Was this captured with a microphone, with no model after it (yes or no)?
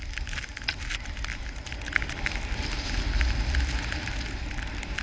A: yes